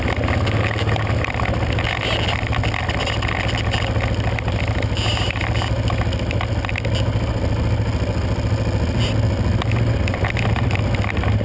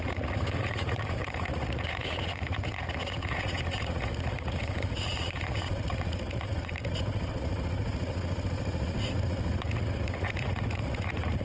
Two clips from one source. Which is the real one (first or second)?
first